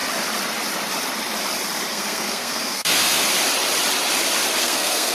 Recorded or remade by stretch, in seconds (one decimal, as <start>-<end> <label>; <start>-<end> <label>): 0.0-1.9 recorded; 1.9-3.3 remade; 3.3-4.6 recorded; 4.6-5.1 remade